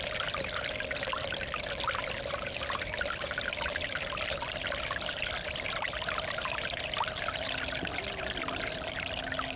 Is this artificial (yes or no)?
no